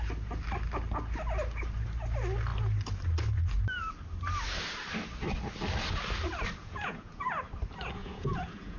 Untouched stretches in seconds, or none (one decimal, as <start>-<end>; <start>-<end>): 0.0-6.6; 7.4-8.0